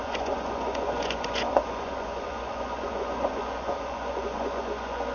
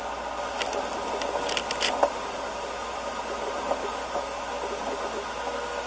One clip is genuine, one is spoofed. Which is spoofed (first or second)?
first